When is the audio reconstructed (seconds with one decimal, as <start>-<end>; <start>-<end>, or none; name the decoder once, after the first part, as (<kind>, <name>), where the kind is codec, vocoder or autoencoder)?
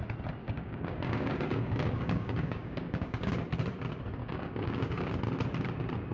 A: 0.4-3.3 (codec, DAC); 4.2-5.1